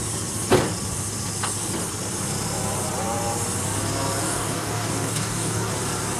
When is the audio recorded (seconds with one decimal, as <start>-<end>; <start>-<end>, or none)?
0.0-4.2; 5.7-6.2